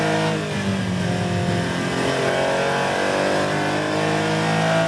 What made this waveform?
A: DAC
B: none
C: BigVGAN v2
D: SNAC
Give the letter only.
B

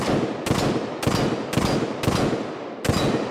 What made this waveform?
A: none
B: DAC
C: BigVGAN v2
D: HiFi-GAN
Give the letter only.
A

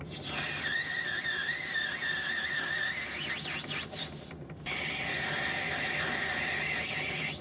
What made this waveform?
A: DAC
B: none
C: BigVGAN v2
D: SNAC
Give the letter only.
B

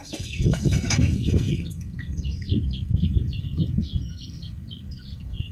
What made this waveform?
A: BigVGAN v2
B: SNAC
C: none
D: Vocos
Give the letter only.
B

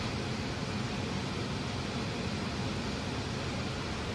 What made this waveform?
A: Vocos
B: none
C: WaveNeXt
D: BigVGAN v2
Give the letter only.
B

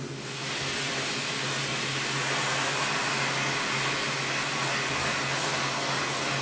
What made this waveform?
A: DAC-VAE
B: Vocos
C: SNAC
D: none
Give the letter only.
D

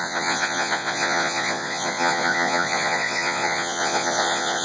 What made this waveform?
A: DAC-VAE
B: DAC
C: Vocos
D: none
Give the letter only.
C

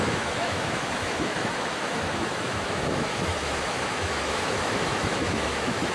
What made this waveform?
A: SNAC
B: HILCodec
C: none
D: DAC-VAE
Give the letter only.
D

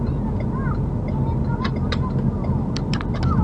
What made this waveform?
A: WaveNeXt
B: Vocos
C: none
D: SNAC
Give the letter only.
C